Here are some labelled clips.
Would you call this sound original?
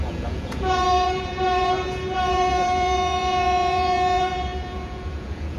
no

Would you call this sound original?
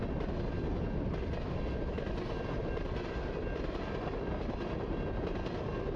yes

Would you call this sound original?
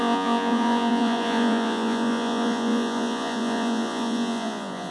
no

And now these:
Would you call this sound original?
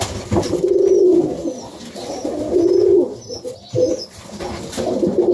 yes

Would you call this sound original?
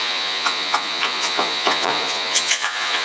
no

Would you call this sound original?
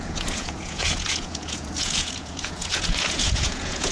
no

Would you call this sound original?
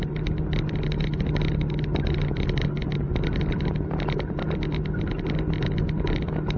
yes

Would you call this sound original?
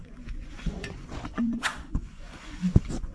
no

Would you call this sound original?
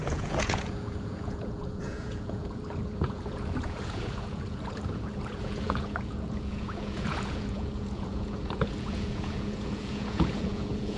no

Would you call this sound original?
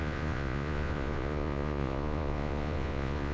no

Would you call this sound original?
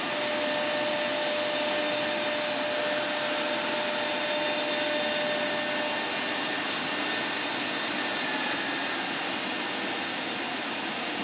yes